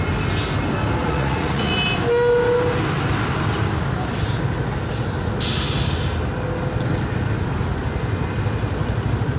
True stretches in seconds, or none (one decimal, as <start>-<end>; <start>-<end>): 0.0-1.0; 1.7-9.4